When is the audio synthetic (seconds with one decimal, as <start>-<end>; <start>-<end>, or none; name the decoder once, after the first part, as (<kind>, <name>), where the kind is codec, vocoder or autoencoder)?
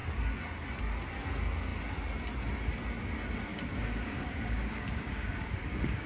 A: 3.5-6.1 (codec, DAC)